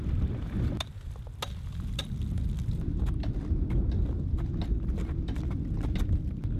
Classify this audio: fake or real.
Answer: real